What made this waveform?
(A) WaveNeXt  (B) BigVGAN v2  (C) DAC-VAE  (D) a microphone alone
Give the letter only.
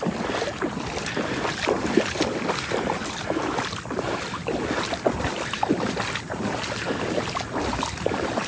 D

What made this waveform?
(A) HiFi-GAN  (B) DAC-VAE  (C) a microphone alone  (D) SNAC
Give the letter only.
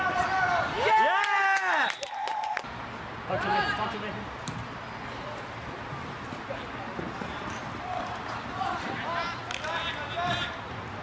C